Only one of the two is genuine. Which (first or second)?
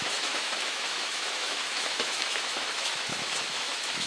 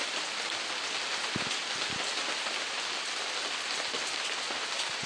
second